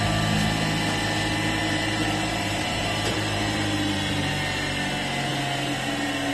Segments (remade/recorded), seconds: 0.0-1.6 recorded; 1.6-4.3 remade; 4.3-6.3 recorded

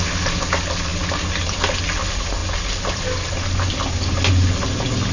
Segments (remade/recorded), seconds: 0.0-5.1 recorded

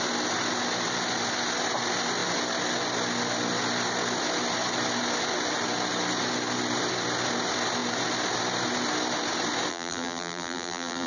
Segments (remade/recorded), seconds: 0.0-9.7 recorded; 9.7-11.1 remade

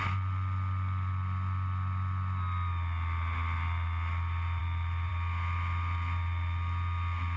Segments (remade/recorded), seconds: 0.0-7.4 recorded

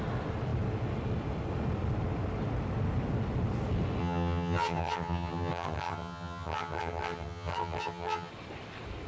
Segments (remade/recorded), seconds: 0.0-4.0 recorded; 4.0-8.3 remade; 8.3-9.1 recorded

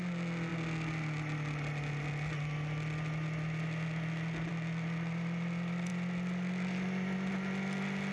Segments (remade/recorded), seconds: 0.0-8.1 recorded